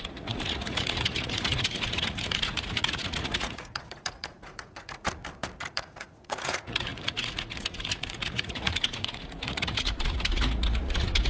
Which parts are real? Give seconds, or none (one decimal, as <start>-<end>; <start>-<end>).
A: 5.2-5.7

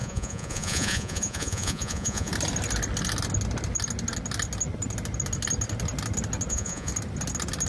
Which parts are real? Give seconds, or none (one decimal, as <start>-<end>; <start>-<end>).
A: 2.3-6.5; 6.9-7.7

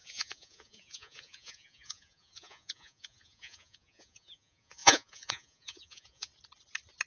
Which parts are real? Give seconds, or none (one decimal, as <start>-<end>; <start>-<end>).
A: 6.3-7.1

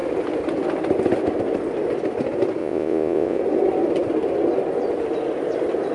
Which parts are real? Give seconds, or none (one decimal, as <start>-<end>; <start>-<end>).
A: 0.0-2.6; 3.4-5.9